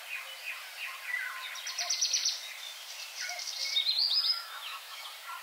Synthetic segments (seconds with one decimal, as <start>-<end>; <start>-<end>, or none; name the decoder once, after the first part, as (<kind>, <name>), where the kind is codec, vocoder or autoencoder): 4.3-5.0 (autoencoder, DAC-VAE)